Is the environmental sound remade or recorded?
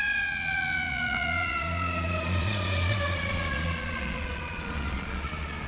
remade